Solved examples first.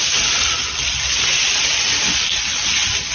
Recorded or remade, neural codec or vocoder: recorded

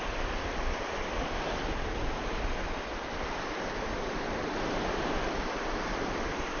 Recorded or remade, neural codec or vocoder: recorded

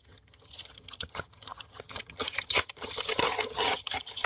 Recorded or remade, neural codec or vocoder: remade, vocoder, HiFi-GAN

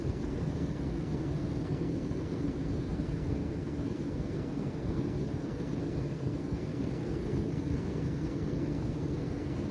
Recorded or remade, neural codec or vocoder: remade, codec, SNAC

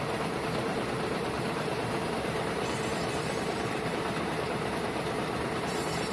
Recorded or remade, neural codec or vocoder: remade, vocoder, BigVGAN v2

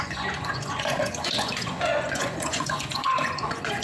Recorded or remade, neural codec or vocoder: remade, vocoder, Vocos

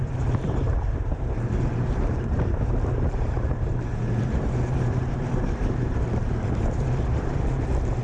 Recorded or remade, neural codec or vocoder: remade, vocoder, BigVGAN v2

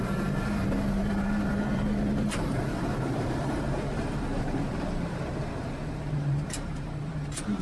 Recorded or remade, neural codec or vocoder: remade, vocoder, BigVGAN v2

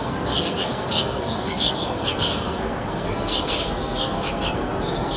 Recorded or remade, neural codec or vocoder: remade, codec, SNAC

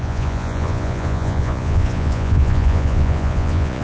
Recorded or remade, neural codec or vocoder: remade, vocoder, Vocos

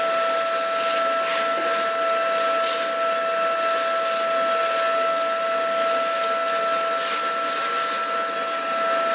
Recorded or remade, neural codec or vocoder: recorded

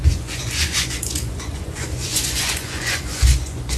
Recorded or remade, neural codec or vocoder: remade, vocoder, Vocos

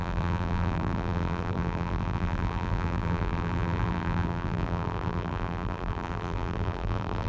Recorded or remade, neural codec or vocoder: remade, vocoder, BigVGAN v2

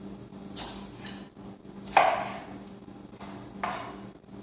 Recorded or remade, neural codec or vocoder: recorded